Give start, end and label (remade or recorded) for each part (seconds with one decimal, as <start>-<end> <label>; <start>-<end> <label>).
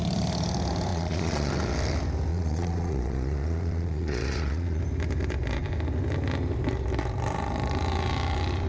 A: 0.0-0.9 recorded; 0.9-1.5 remade; 1.5-2.3 recorded; 2.3-4.8 remade; 4.8-8.7 recorded